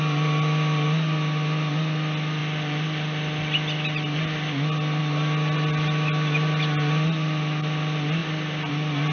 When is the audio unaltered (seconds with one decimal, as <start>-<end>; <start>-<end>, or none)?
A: 0.0-9.1

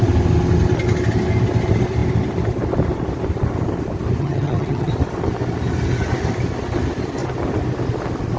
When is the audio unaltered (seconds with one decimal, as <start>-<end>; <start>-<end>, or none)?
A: 0.0-4.2; 4.9-8.4

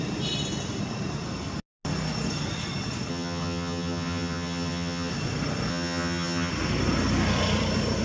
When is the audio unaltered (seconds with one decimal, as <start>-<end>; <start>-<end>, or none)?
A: 0.0-3.1; 5.1-5.7; 6.5-8.0

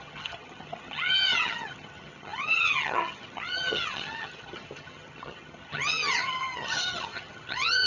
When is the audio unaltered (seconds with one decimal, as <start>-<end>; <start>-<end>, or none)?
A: none

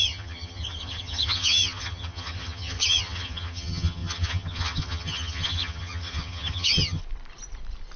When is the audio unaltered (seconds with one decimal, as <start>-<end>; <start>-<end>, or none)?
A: 7.0-8.0

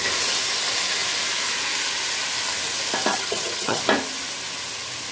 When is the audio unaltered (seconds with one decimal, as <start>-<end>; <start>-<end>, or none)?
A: 0.0-3.1; 3.8-5.1

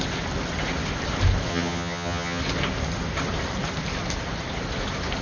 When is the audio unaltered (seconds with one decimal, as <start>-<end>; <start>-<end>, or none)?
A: 0.0-1.5; 2.4-5.2

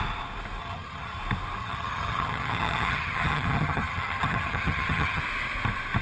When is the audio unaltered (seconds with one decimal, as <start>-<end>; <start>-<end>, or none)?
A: 0.0-0.6; 1.2-1.6; 5.2-6.0